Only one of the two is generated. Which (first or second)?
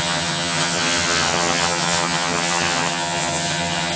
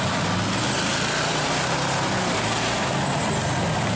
first